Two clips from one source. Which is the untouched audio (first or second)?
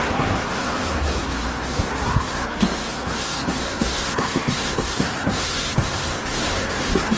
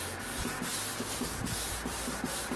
second